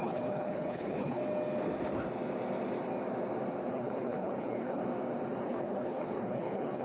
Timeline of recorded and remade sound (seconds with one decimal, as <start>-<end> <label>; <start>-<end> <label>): 0.0-1.2 remade; 1.2-3.7 recorded; 3.7-4.8 remade; 4.8-5.4 recorded; 5.4-6.8 remade

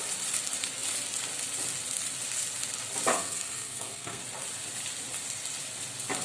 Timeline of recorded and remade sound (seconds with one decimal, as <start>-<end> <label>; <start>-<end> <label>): 0.0-3.1 recorded; 3.1-4.2 remade; 4.2-6.2 recorded

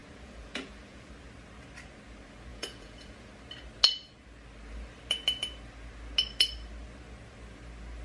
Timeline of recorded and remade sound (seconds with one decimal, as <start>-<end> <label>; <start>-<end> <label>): 0.0-1.1 remade; 1.1-2.5 recorded; 2.5-3.3 remade; 3.3-8.0 recorded

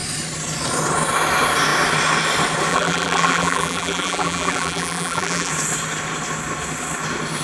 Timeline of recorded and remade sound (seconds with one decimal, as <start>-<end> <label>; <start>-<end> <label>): 0.0-2.7 recorded; 2.7-5.5 remade; 5.5-7.4 recorded

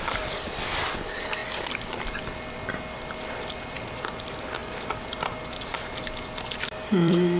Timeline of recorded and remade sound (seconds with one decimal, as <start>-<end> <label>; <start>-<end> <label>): 0.0-1.4 remade; 1.4-2.9 recorded; 2.9-7.4 remade

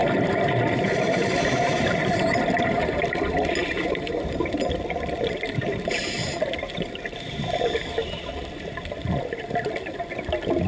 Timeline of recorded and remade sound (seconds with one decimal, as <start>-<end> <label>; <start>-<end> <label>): 0.0-3.0 remade; 3.0-3.6 recorded; 3.6-4.8 remade; 4.8-5.7 recorded; 5.7-7.5 remade; 7.5-10.7 recorded

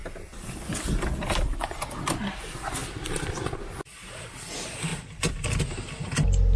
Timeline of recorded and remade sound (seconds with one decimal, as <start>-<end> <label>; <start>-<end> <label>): 0.0-2.4 remade; 2.4-2.8 recorded; 2.8-4.5 remade; 4.5-4.9 recorded; 4.9-5.6 remade; 5.6-6.6 recorded

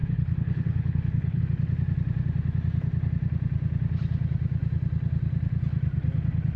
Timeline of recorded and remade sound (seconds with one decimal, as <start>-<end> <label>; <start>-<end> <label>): 0.0-1.4 remade; 1.4-6.6 recorded